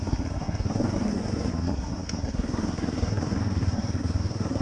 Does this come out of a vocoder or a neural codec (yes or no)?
yes